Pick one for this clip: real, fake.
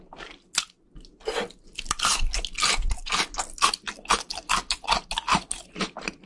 real